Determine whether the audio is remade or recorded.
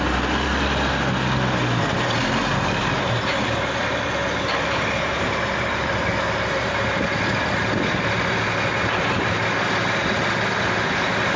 recorded